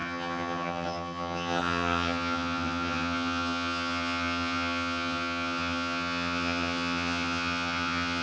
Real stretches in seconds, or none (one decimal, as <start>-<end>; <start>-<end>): none